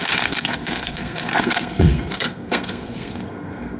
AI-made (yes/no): yes